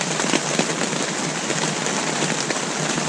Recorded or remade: recorded